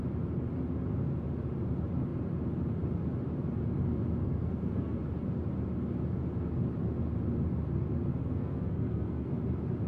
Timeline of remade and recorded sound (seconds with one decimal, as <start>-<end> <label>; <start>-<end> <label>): 0.0-4.2 recorded; 4.2-5.0 remade; 5.0-8.2 recorded; 8.2-9.3 remade; 9.3-9.9 recorded